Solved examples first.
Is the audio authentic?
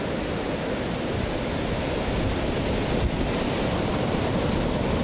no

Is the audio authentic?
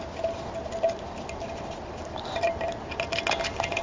yes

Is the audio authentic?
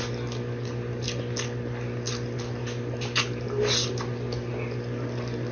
yes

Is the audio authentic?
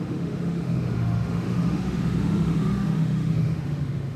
no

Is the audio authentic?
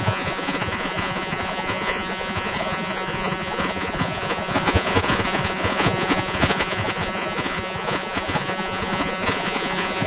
no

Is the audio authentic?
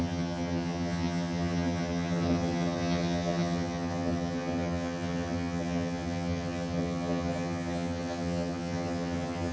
no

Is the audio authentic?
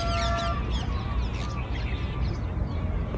yes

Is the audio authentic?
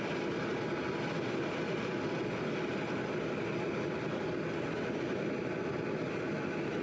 yes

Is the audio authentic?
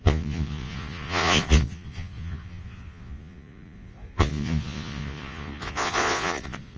no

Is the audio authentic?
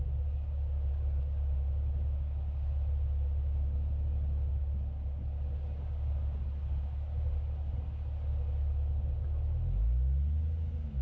yes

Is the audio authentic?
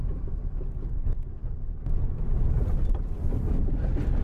yes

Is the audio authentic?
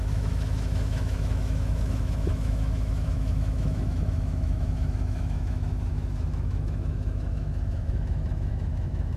no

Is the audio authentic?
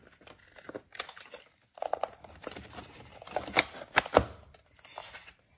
yes